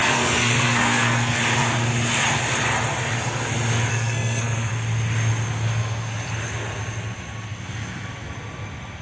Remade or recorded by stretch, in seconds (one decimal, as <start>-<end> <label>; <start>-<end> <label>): 0.0-1.4 remade; 1.4-3.9 recorded; 3.9-4.7 remade; 4.7-9.0 recorded